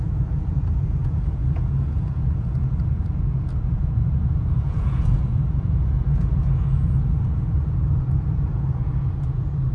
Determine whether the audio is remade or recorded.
remade